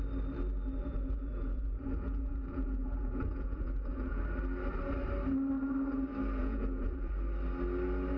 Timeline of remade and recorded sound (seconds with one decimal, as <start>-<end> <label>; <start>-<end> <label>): 0.0-0.8 recorded; 0.8-4.2 remade; 4.2-6.4 recorded; 6.4-7.1 remade; 7.1-8.2 recorded